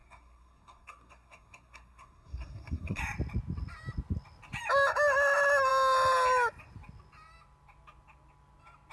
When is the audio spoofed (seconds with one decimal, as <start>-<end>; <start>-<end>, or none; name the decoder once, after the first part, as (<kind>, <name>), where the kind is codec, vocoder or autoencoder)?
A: 0.0-3.0 (codec, SNAC)